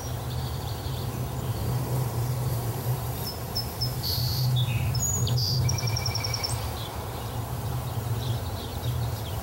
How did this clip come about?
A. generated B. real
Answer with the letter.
A